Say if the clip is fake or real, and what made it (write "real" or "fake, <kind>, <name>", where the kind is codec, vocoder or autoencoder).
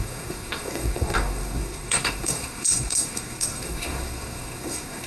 fake, codec, SNAC